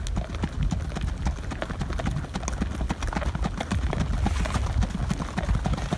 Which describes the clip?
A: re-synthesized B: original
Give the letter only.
B